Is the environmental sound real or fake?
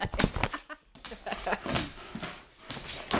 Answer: real